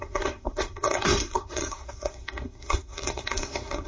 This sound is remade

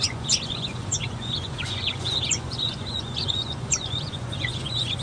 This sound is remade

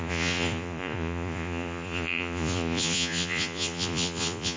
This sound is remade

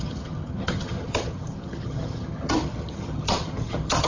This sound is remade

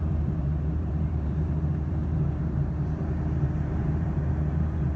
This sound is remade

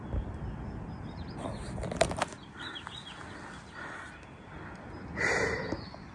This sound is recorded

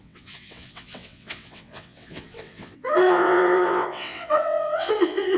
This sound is remade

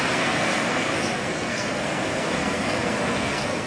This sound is remade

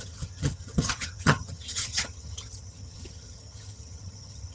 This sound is remade